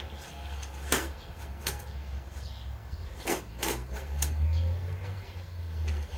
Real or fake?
fake